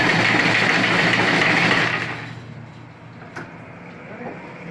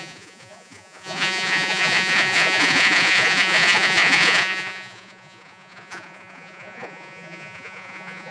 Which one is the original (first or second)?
first